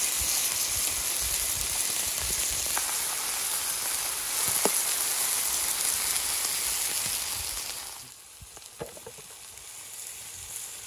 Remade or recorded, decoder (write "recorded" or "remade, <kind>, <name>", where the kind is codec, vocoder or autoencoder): recorded